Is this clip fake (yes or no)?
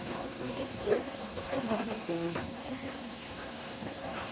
yes